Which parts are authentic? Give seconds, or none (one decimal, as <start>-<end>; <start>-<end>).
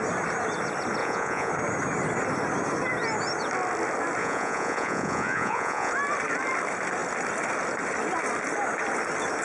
0.0-1.0; 1.5-4.2; 5.9-9.4